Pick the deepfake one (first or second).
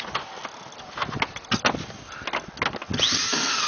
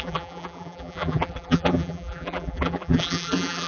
second